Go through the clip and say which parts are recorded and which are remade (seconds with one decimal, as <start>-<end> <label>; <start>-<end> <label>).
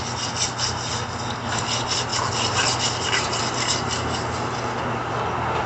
0.0-5.7 recorded